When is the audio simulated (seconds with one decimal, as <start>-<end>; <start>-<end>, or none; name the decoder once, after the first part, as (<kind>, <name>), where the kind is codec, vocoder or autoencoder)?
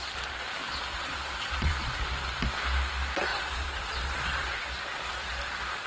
0.9-2.1 (vocoder, Vocos); 3.3-4.6